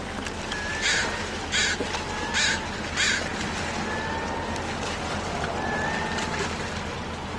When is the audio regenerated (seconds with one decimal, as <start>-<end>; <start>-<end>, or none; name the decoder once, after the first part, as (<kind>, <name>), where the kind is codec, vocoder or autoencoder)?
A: none